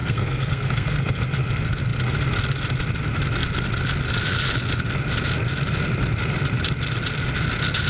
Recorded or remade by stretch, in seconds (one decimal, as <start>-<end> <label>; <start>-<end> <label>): 0.0-1.0 remade; 1.0-7.9 recorded